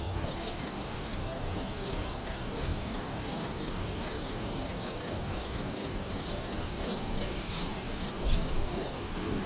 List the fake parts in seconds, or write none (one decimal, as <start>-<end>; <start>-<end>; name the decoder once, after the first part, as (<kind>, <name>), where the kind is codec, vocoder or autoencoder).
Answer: 0.0-9.5 (codec, DAC)